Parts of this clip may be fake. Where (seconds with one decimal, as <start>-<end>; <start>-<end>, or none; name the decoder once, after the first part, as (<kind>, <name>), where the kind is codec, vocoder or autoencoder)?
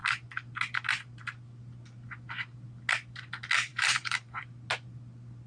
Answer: 3.7-4.4 (vocoder, BigVGAN v2)